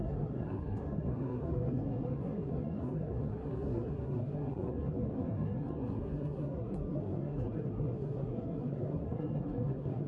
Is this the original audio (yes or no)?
no